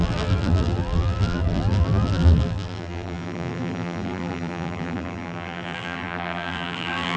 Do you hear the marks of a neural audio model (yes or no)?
yes